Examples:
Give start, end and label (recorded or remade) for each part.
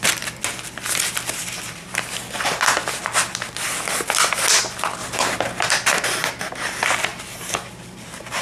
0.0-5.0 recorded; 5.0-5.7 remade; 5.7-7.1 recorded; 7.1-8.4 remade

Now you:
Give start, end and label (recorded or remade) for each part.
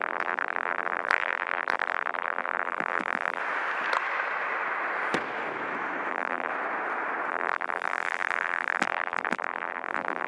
0.0-3.4 remade; 3.4-6.1 recorded; 6.1-6.5 remade; 6.5-7.3 recorded; 7.3-10.3 remade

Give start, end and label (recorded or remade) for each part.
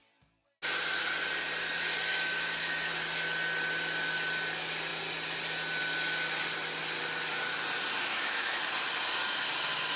0.0-2.1 recorded; 2.1-2.9 remade; 2.9-8.1 recorded; 8.1-8.6 remade; 8.6-10.0 recorded